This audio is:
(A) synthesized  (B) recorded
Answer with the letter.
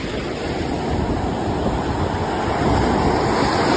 B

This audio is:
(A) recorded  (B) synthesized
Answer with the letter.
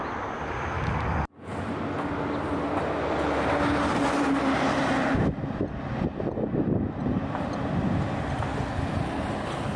A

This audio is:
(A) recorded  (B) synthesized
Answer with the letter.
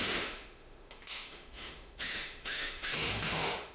B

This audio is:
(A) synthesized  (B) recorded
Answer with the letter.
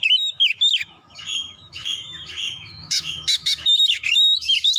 A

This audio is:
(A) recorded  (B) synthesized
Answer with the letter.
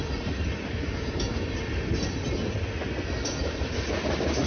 A